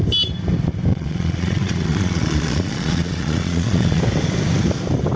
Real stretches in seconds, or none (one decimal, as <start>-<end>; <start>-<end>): 0.0-0.9; 4.0-5.2